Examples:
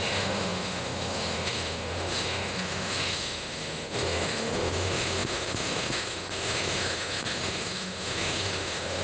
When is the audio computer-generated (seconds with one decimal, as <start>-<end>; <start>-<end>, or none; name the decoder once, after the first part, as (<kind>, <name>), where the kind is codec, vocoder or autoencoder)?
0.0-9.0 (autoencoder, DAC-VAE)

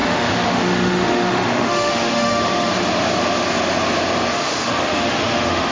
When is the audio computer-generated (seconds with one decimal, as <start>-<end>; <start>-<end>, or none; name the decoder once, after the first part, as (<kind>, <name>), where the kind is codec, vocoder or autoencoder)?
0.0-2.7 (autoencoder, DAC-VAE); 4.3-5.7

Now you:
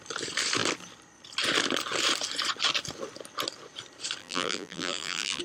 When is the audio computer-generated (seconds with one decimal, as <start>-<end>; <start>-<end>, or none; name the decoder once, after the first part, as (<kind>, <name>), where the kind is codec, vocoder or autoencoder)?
4.2-5.4 (vocoder, BigVGAN v2)

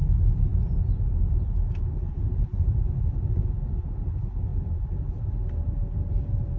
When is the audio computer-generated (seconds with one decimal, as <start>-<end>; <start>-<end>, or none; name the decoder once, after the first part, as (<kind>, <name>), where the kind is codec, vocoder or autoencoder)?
none

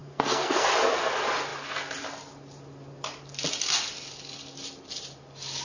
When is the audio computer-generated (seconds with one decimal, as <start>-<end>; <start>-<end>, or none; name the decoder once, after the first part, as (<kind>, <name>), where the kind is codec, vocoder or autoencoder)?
0.0-0.7 (codec, SNAC)